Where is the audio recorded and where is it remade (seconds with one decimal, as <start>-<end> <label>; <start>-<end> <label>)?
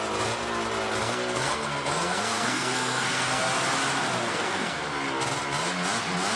0.0-1.0 recorded; 1.0-3.4 remade; 3.4-4.3 recorded; 4.3-4.8 remade; 4.8-6.4 recorded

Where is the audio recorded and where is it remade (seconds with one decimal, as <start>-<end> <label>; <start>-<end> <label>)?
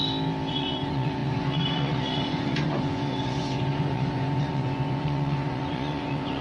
0.0-0.5 recorded; 0.5-6.4 remade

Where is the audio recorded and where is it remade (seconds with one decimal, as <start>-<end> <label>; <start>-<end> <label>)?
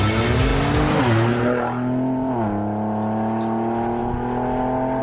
0.0-5.0 recorded